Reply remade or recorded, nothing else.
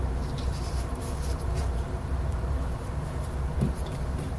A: remade